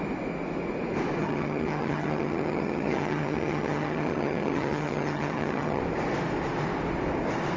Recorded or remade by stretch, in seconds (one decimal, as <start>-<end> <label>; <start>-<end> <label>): 0.0-1.2 recorded; 1.2-5.8 remade; 5.8-7.6 recorded